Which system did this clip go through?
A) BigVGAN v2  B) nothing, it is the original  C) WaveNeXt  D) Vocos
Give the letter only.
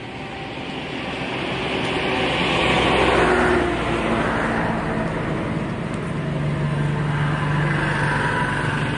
B